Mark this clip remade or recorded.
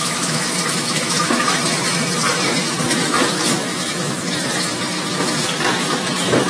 remade